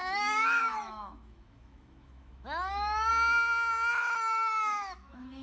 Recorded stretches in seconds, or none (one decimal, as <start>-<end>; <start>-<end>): 3.1-4.0